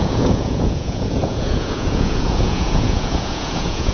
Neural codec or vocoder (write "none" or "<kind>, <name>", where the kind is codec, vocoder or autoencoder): vocoder, Vocos